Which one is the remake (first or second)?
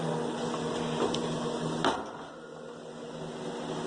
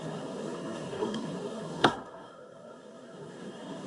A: second